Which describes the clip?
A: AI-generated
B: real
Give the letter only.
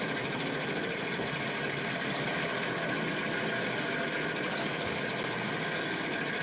B